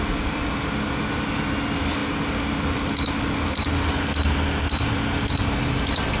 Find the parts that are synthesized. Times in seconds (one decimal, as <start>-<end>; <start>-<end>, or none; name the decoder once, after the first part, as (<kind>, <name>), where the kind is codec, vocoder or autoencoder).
none